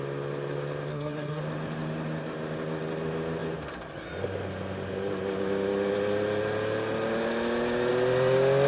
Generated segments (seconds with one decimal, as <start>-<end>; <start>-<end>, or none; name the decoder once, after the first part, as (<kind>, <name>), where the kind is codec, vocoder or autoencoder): 0.9-1.4 (codec, SNAC)